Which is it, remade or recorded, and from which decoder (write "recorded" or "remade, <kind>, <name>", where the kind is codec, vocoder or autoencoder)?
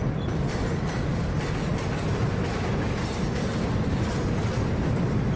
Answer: recorded